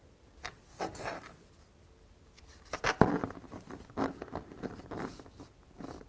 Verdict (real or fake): real